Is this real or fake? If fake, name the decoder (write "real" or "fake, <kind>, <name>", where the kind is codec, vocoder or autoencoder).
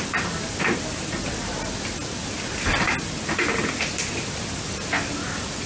real